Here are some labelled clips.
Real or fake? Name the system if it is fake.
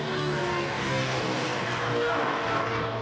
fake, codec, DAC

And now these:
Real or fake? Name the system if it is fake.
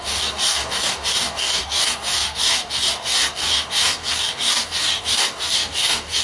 fake, codec, DAC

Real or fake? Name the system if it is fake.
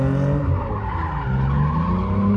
real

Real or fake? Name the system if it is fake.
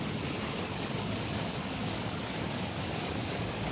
fake, codec, DAC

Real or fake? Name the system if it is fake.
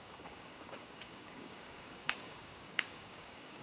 fake, codec, DAC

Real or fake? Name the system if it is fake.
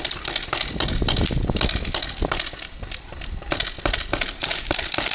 real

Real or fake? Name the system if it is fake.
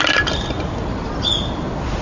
real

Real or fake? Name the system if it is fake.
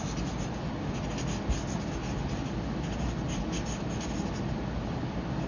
real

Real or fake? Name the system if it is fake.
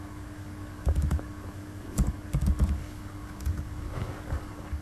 fake, codec, DAC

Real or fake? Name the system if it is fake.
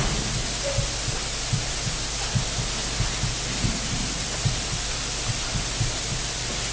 real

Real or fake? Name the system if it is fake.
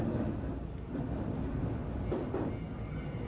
real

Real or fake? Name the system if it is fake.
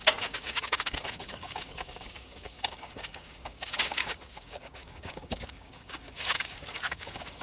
fake, codec, DAC